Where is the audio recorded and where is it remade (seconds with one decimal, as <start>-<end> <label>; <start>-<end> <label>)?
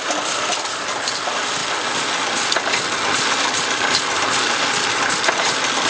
0.0-5.9 recorded